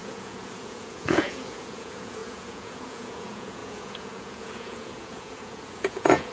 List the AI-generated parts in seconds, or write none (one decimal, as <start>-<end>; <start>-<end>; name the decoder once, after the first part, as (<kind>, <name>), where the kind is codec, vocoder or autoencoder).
0.0-6.3 (vocoder, Vocos)